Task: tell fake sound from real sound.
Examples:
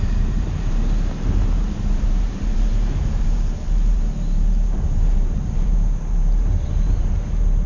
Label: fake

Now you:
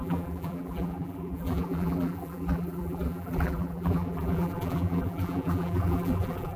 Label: fake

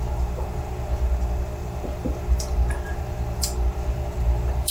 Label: fake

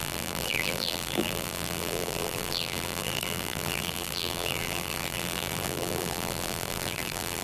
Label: fake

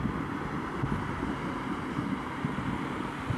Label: real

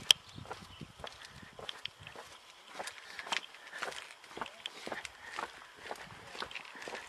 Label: real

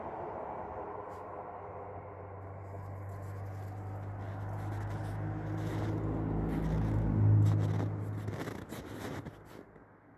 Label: real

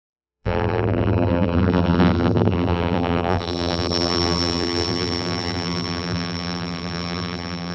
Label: fake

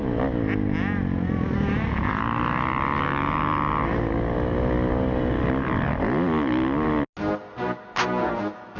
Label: real